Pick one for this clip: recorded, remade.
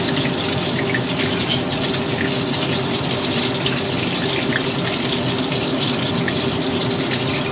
recorded